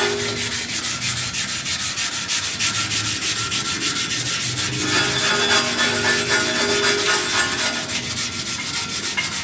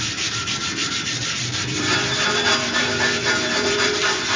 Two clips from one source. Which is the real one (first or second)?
first